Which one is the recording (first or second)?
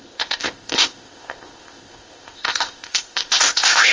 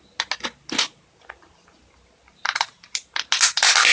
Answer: second